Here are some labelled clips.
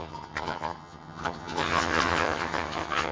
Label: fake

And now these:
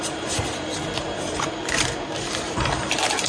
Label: fake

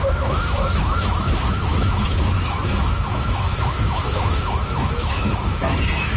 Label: fake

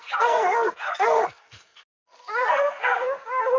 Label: fake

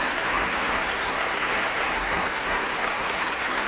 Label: fake